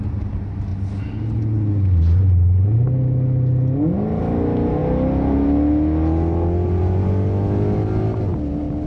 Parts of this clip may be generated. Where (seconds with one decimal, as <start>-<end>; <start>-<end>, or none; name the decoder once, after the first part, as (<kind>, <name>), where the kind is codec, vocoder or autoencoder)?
none